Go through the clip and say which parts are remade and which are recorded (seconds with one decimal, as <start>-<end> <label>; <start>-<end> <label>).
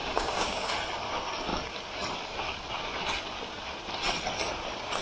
0.0-0.7 remade; 0.7-5.0 recorded